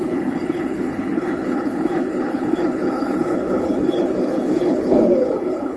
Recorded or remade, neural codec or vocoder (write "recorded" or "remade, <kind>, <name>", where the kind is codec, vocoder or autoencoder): remade, codec, HILCodec